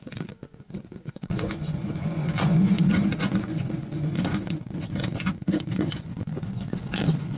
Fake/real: fake